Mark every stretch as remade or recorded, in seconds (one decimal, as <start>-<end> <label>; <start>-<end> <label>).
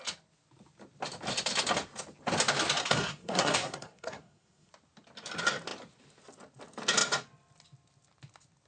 0.0-2.8 recorded; 2.8-4.7 remade; 4.7-8.7 recorded